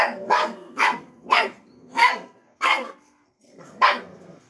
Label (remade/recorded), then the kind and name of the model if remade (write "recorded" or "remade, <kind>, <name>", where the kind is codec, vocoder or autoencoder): remade, codec, SNAC